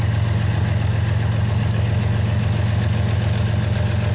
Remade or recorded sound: recorded